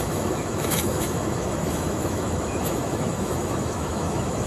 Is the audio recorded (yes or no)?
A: no